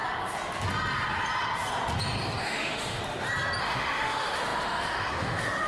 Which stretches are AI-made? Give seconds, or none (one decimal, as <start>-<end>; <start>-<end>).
2.4-3.0; 3.6-5.7